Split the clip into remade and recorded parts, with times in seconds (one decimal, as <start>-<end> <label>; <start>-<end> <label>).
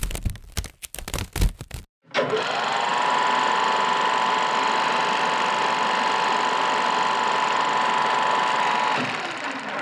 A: 0.0-9.8 recorded